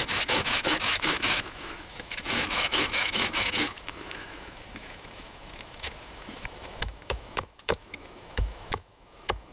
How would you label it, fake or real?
fake